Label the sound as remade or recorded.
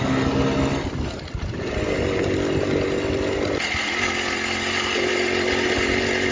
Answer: recorded